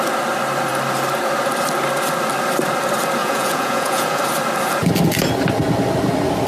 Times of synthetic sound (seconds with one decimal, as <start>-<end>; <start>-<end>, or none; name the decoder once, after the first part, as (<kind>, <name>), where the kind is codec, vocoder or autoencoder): 3.2-4.2 (vocoder, Vocos)